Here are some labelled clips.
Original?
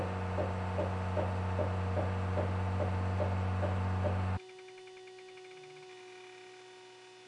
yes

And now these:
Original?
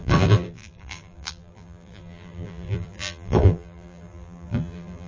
no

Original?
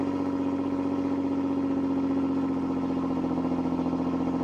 yes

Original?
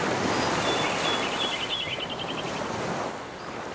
yes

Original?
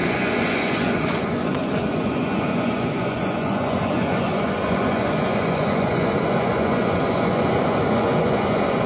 no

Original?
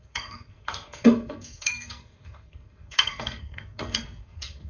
no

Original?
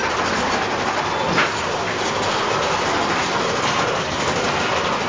yes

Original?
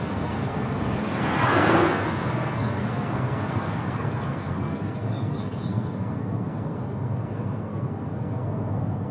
no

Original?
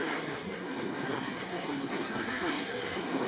no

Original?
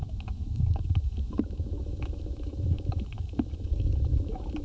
no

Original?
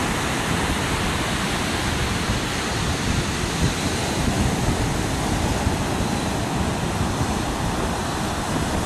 yes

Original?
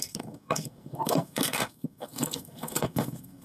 no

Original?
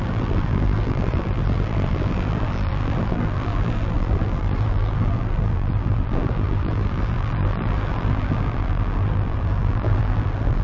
no